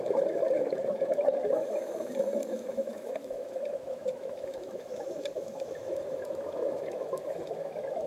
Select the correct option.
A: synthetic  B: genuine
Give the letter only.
A